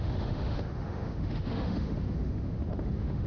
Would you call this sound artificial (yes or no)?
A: yes